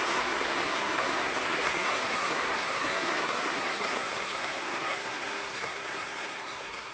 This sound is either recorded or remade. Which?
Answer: remade